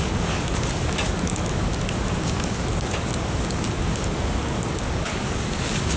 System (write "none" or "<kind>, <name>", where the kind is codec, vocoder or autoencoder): codec, DAC